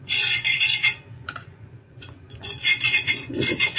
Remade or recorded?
remade